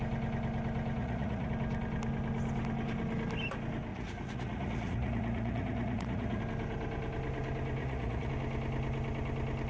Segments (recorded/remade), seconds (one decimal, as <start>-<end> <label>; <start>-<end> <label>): 0.0-1.0 recorded; 1.0-1.5 remade; 1.5-3.9 recorded; 3.9-6.4 remade; 6.4-7.8 recorded; 7.8-8.3 remade; 8.3-9.7 recorded